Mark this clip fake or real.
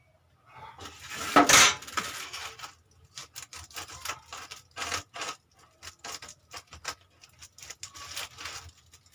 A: real